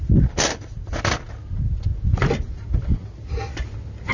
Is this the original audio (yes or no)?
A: yes